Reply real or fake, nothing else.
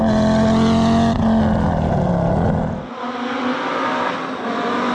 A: real